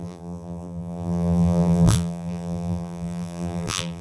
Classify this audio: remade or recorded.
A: remade